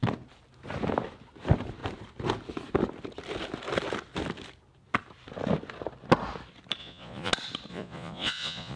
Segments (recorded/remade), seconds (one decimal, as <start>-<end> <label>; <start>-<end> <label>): 0.0-6.8 recorded; 6.8-7.3 remade; 7.3-7.7 recorded; 7.7-8.8 remade